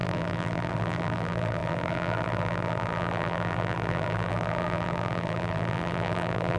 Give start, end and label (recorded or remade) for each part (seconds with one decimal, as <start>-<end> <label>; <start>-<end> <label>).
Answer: 0.0-6.6 remade